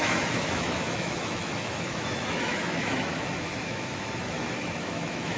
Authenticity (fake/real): fake